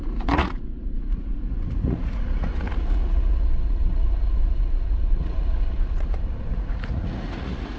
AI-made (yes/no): yes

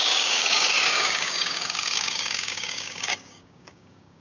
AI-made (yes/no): yes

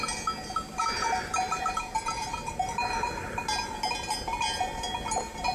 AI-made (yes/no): no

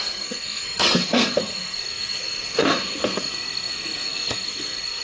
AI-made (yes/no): yes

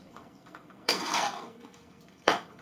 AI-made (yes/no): yes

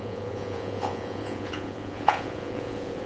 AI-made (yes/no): yes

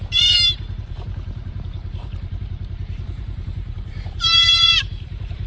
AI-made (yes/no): yes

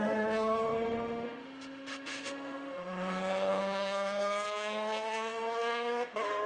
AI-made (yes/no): yes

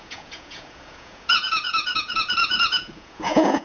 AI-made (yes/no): yes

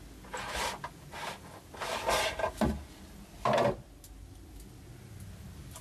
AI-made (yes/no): no